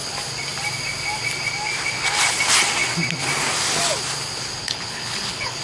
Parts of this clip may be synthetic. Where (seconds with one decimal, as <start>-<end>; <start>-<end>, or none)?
4.6-5.6